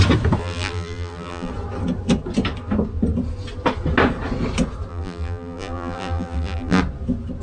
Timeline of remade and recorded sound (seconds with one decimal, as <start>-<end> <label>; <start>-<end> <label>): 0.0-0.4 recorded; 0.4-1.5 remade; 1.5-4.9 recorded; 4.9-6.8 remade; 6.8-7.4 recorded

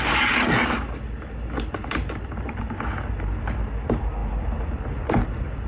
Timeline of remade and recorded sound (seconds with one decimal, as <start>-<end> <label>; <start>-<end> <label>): 0.0-1.8 recorded; 1.8-2.6 remade; 2.6-5.7 recorded

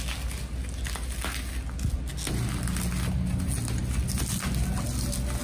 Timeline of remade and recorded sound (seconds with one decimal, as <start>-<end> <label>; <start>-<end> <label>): 0.0-5.4 recorded